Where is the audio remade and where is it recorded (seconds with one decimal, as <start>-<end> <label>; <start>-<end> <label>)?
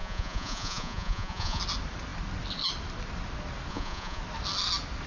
0.0-1.6 remade; 1.6-3.7 recorded; 3.7-4.2 remade; 4.2-5.1 recorded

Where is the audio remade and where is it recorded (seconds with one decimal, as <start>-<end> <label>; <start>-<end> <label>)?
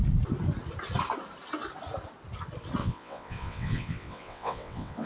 0.0-2.8 recorded; 2.8-5.1 remade